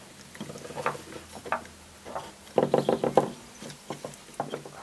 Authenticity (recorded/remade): recorded